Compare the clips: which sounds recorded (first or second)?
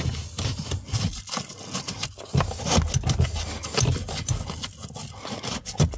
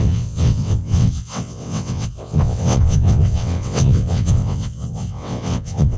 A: first